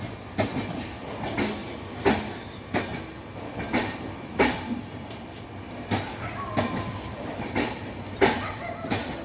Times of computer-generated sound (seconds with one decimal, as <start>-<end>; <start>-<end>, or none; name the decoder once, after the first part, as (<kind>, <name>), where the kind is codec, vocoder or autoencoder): none